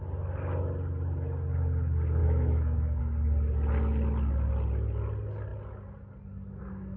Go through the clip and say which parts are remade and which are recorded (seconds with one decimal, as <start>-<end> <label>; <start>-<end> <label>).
0.0-2.2 recorded; 2.2-3.0 remade; 3.0-7.0 recorded